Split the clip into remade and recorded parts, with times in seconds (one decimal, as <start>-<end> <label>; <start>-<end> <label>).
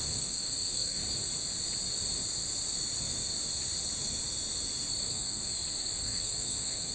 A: 0.0-1.0 remade; 1.0-5.1 recorded; 5.1-5.5 remade; 5.5-6.0 recorded; 6.0-6.9 remade